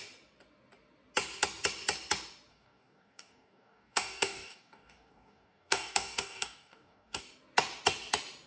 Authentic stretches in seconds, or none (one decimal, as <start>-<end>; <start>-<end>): 0.0-2.5; 7.2-8.5